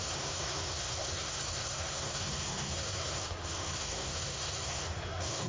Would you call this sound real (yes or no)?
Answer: no